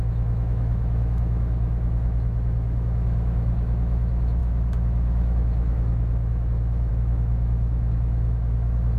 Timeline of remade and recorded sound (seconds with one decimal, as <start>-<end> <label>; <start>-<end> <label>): 0.0-9.0 remade